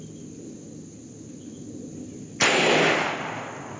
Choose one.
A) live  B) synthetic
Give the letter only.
A